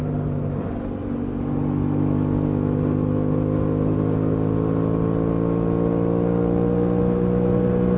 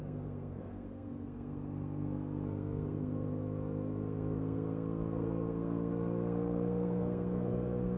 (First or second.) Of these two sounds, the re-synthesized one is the second